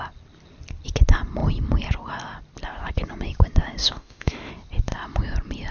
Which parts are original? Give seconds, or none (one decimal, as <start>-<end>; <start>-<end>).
0.0-3.8; 4.5-5.7